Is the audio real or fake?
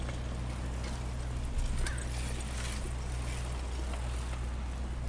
real